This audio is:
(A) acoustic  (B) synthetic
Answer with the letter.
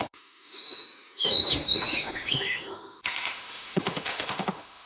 B